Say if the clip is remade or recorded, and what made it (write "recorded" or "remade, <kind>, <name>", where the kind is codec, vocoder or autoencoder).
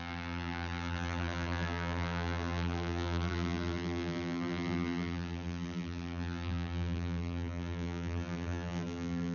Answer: remade, vocoder, BigVGAN v2